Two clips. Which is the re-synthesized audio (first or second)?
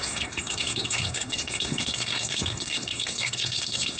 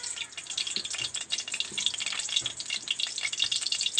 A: first